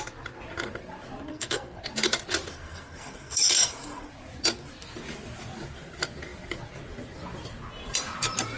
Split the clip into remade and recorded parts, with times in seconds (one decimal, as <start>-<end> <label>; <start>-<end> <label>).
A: 0.0-1.3 recorded; 1.3-1.8 remade; 1.8-2.5 recorded; 2.5-4.1 remade; 4.1-8.6 recorded